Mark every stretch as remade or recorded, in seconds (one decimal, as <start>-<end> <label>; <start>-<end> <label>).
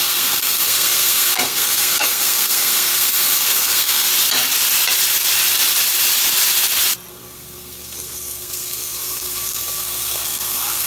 0.0-4.1 remade; 4.1-7.1 recorded; 7.1-10.9 remade